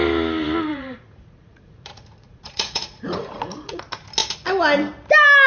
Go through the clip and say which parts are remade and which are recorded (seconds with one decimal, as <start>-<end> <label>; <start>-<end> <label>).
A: 0.0-0.7 recorded; 0.7-3.8 remade; 3.8-5.5 recorded